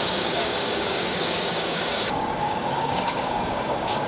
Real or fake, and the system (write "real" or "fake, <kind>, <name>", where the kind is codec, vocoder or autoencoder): fake, codec, DAC